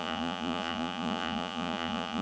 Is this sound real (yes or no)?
no